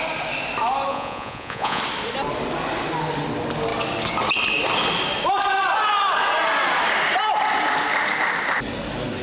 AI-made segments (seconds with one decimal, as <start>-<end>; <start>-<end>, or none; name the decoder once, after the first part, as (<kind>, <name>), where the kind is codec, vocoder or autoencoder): 0.9-1.8 (vocoder, Vocos)